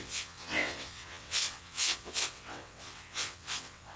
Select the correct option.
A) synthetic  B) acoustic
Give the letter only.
A